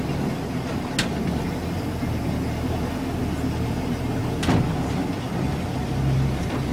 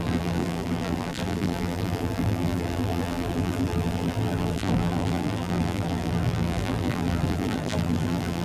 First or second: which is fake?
second